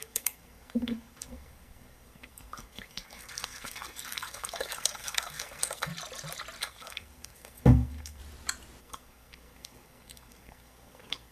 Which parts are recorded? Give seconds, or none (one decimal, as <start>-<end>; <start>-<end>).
5.9-6.6; 8.2-8.8